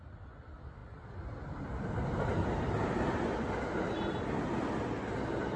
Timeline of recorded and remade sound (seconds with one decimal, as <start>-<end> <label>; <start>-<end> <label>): 0.0-5.6 recorded